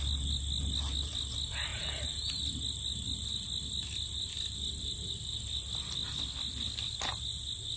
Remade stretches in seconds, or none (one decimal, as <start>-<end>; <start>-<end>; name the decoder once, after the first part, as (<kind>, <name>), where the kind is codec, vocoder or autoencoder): 1.7-2.3 (vocoder, BigVGAN v2)